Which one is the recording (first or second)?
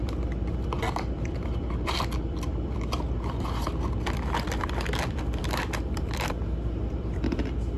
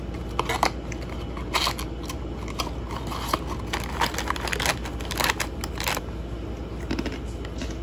second